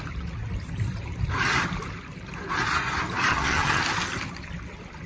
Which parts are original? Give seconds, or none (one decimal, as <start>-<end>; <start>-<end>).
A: 0.0-3.3; 3.8-5.1